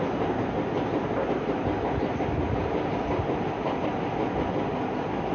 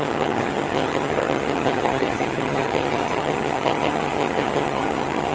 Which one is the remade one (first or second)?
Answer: second